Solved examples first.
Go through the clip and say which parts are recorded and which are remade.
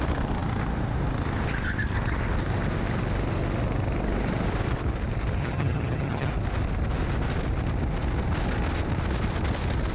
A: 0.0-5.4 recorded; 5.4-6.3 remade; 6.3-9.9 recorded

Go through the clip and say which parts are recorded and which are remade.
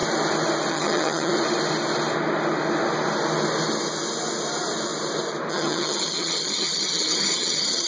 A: 0.0-0.7 recorded; 0.7-1.3 remade; 1.3-5.5 recorded; 5.5-7.9 remade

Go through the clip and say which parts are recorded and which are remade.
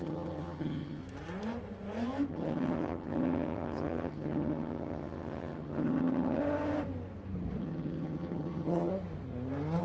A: 0.0-1.0 remade; 1.0-2.3 recorded; 2.3-6.4 remade; 6.4-7.6 recorded; 7.6-8.9 remade; 8.9-9.8 recorded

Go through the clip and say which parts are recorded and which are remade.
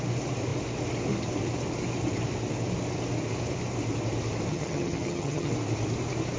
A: 0.0-4.5 recorded; 4.5-5.5 remade; 5.5-6.4 recorded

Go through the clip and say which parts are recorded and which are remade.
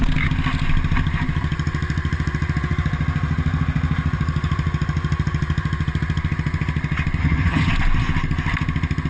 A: 0.0-7.2 recorded; 7.2-7.7 remade; 7.7-9.1 recorded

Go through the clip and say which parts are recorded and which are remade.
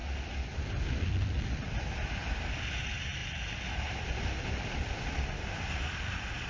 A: 0.0-6.5 recorded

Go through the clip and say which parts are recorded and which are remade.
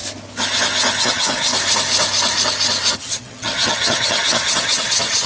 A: 0.0-1.0 recorded; 1.0-1.5 remade; 1.5-3.0 recorded; 3.0-5.3 remade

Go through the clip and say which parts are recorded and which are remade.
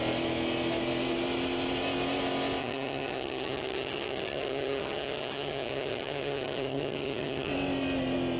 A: 0.0-2.6 recorded; 2.6-7.5 remade; 7.5-8.4 recorded